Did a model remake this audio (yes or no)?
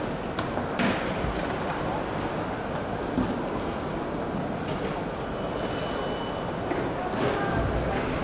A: no